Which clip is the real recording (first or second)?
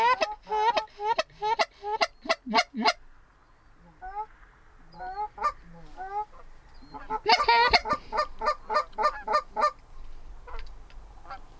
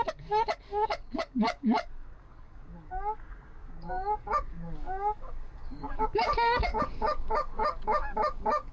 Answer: first